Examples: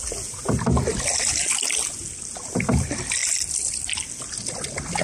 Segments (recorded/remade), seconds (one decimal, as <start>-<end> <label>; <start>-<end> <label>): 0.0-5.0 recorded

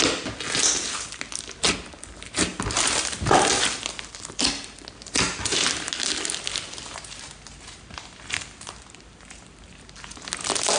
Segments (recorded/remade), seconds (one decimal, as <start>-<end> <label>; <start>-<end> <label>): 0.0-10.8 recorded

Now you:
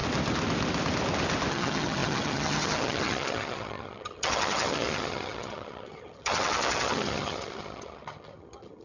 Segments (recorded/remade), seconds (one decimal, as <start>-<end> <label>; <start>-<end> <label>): 0.0-1.5 recorded; 1.5-8.8 remade